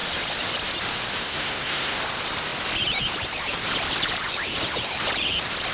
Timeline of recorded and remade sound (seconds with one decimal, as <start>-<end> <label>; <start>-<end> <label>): 0.0-1.2 recorded; 1.2-2.0 remade; 2.0-5.7 recorded